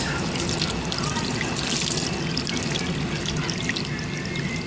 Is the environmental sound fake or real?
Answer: real